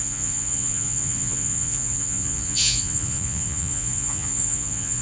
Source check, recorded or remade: remade